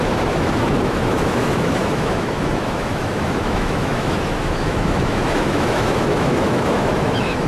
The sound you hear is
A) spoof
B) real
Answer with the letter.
A